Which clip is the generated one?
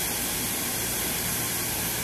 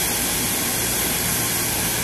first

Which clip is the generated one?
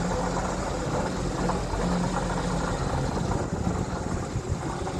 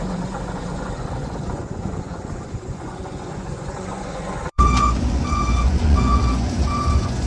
second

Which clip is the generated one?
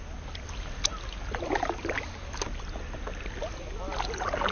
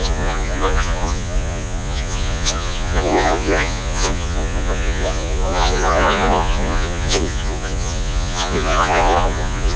second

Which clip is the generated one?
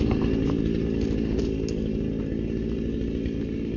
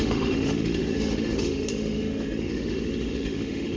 second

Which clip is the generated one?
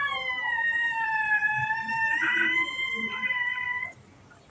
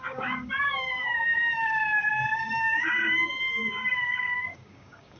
second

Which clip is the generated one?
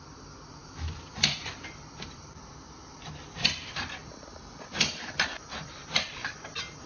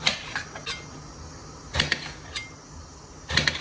first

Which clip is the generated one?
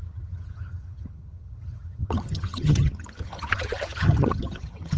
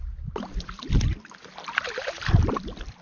first